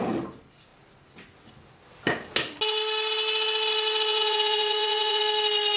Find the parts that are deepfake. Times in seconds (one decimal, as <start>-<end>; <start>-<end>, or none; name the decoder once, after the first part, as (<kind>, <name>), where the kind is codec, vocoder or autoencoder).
4.1-5.2 (vocoder, Vocos)